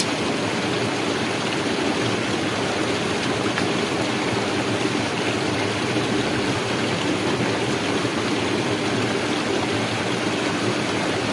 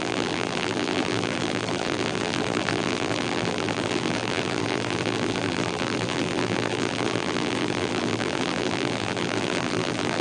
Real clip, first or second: first